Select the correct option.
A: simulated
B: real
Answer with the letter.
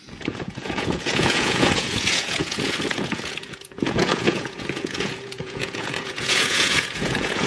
A